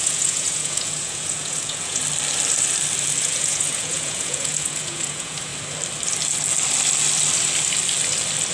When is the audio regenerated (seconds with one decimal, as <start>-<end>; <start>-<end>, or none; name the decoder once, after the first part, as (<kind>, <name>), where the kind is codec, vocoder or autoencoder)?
0.0-2.0 (vocoder, Vocos); 3.2-5.5